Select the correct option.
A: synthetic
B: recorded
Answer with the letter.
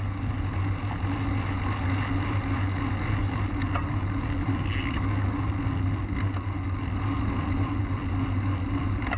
B